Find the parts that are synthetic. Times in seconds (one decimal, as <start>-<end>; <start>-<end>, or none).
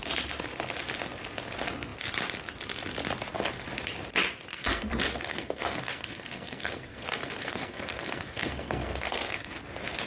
4.5-9.6